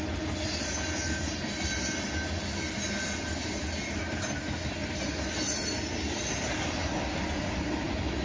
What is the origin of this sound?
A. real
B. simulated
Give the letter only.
A